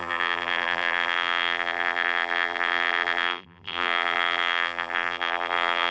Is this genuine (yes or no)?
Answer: no